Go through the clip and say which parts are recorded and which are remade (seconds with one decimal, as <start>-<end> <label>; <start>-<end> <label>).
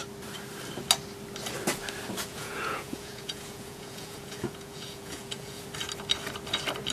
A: 0.0-2.3 recorded; 2.3-5.6 remade; 5.6-6.9 recorded